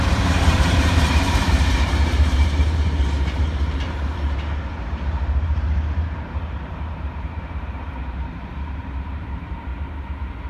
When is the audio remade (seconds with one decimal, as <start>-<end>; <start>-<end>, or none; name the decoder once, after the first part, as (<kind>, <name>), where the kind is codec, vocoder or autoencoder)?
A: 0.0-9.7 (vocoder, BigVGAN v2)